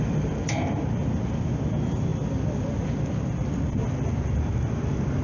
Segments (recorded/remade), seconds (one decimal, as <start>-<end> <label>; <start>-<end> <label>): 0.0-5.2 recorded